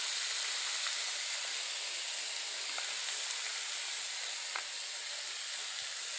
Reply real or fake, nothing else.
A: real